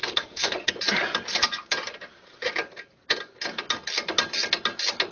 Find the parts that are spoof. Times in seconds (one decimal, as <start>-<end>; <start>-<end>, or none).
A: 0.0-0.7